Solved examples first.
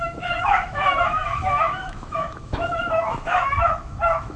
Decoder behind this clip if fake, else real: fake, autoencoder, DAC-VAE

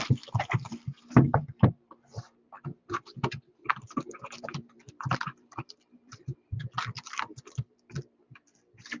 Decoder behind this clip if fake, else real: fake, vocoder, BigVGAN v2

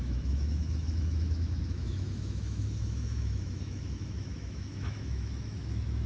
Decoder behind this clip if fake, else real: fake, autoencoder, DAC-VAE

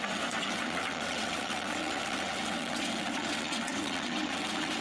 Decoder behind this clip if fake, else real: fake, vocoder, WaveNeXt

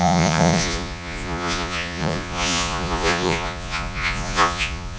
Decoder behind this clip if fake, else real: fake, vocoder, Vocos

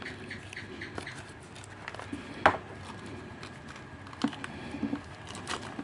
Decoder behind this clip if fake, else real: real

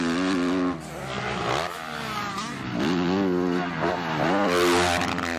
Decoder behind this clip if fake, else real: real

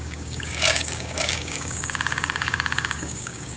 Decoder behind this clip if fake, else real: fake, codec, DAC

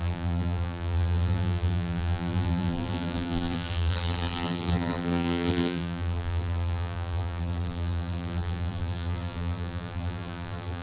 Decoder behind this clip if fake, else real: fake, vocoder, BigVGAN v2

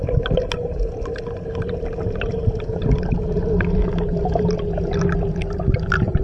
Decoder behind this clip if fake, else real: real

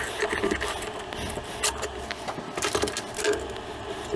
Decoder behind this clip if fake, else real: real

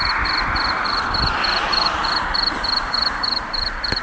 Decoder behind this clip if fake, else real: fake, vocoder, BigVGAN v2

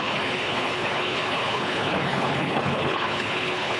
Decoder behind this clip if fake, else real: fake, codec, HILCodec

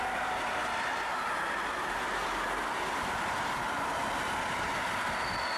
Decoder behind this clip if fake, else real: real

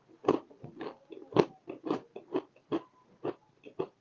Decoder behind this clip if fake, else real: real